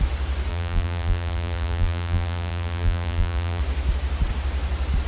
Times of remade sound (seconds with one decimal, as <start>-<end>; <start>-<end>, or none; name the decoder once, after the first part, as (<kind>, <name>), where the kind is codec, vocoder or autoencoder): 0.5-3.6 (vocoder, BigVGAN v2)